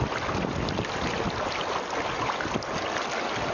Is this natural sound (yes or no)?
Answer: yes